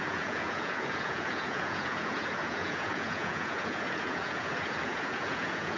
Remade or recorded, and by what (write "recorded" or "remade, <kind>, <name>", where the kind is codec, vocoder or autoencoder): remade, vocoder, Vocos